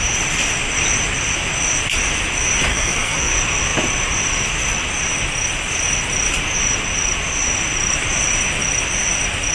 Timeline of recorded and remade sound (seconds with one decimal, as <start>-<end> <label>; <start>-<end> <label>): 0.0-2.7 recorded; 2.7-3.3 remade; 3.3-9.5 recorded